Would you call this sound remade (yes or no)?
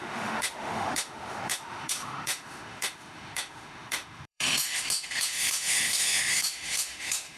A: yes